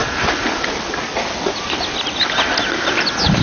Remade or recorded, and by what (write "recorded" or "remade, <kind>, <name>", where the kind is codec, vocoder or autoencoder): recorded